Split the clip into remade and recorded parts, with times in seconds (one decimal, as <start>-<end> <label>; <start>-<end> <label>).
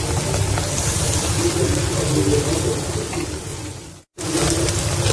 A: 0.0-3.5 recorded; 3.5-4.5 remade; 4.5-5.1 recorded